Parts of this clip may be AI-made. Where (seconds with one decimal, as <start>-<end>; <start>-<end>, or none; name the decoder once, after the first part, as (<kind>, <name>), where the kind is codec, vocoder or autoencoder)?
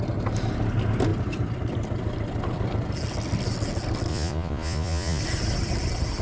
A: 4.1-5.2 (vocoder, Vocos)